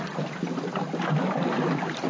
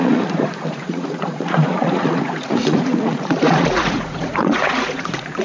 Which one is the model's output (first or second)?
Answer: second